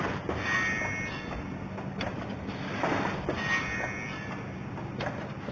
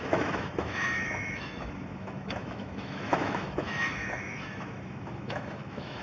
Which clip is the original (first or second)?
first